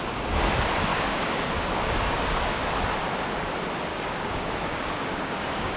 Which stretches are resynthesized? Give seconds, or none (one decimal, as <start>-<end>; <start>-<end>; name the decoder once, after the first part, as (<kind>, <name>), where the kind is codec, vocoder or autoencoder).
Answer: 0.9-2.7 (codec, DAC); 3.9-5.8